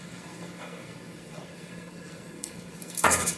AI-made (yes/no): yes